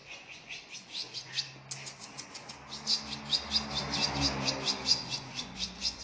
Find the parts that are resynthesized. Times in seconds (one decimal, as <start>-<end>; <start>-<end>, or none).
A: 0.0-1.3; 2.0-2.5; 5.0-6.0